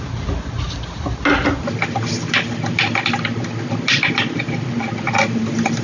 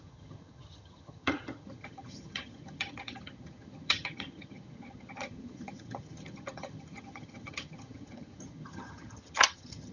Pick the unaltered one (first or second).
first